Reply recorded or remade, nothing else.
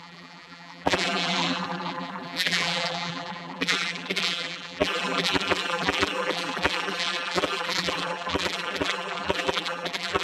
remade